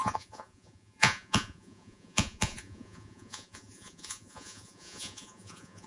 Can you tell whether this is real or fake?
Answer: fake